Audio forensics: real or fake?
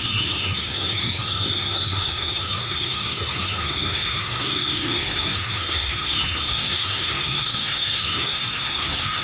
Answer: fake